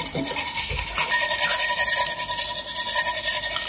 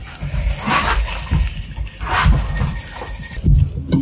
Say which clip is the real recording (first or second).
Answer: second